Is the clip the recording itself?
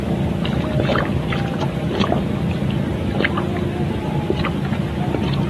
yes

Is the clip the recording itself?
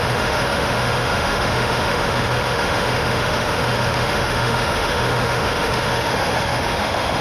no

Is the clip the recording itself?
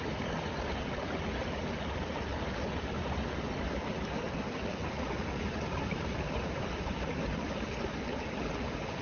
yes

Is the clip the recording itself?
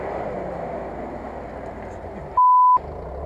yes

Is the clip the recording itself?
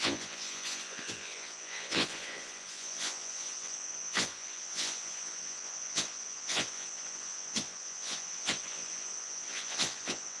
no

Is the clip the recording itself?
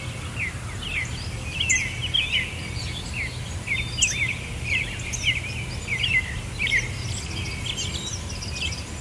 yes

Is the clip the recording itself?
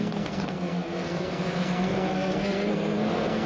no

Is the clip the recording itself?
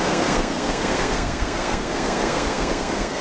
no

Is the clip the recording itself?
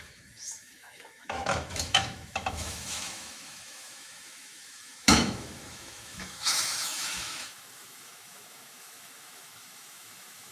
no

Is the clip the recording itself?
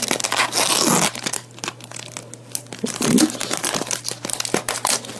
yes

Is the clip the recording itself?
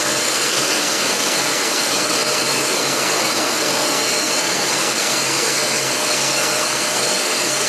no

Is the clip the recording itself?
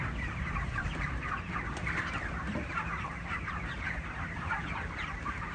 no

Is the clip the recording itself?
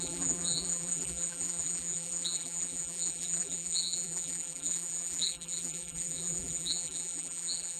no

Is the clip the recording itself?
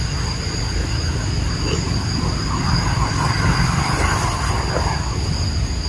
yes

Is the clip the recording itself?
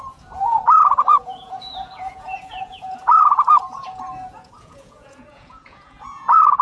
no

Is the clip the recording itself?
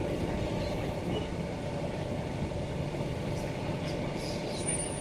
no